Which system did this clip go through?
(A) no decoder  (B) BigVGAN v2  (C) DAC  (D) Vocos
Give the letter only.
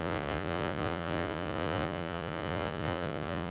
D